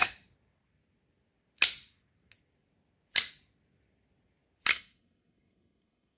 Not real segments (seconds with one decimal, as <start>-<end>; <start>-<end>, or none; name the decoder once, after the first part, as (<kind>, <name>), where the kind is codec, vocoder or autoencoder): 4.7-6.2 (codec, SNAC)